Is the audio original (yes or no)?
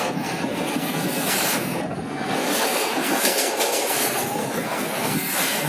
no